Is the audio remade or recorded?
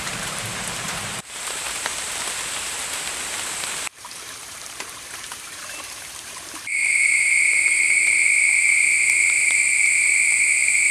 remade